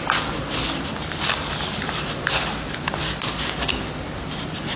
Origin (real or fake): real